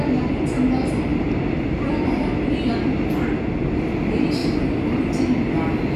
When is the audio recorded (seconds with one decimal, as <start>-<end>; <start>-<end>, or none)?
0.0-6.0